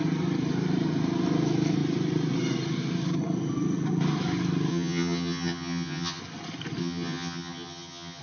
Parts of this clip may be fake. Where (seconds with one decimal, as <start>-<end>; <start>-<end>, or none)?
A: 4.7-6.2; 6.8-8.2